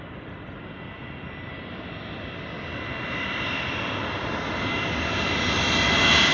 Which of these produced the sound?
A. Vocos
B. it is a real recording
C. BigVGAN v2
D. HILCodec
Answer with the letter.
B